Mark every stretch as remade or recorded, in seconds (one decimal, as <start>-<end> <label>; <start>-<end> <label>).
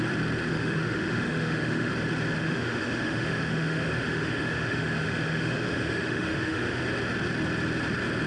0.0-0.5 recorded; 0.5-1.9 remade; 1.9-2.4 recorded; 2.4-6.8 remade; 6.8-8.3 recorded